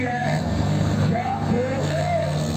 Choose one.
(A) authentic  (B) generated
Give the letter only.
B